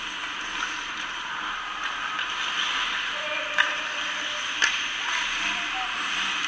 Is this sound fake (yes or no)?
no